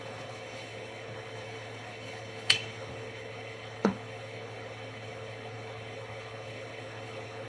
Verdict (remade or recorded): remade